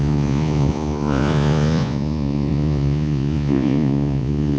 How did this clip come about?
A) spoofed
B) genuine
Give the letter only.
A